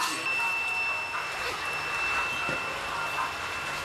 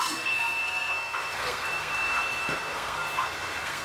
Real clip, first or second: first